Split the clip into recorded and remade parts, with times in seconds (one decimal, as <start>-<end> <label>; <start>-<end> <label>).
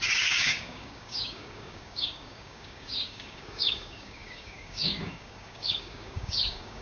0.0-6.8 remade